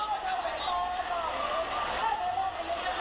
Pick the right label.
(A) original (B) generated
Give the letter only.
A